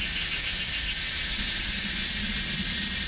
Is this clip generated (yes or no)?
no